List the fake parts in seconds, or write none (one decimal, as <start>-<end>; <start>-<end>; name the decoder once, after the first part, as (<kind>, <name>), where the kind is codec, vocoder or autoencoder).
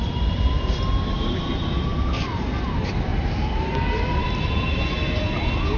0.0-0.7 (vocoder, BigVGAN v2); 1.9-2.5; 3.1-4.8